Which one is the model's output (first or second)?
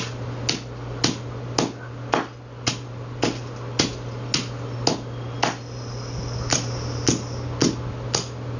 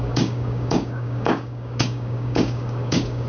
second